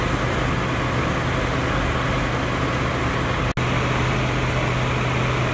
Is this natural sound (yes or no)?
yes